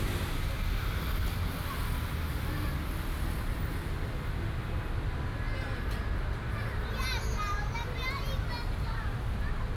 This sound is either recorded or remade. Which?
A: recorded